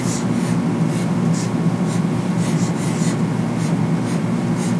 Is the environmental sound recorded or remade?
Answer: recorded